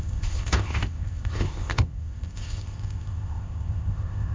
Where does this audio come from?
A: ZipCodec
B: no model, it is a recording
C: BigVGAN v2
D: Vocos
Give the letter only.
A